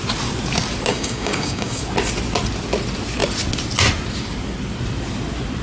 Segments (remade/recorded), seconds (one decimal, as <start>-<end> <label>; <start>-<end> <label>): 0.0-0.9 recorded; 0.9-1.8 remade; 1.8-5.6 recorded